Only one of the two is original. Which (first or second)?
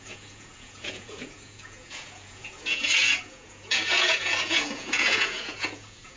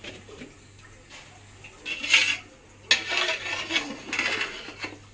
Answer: second